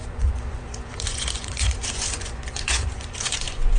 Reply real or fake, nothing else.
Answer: fake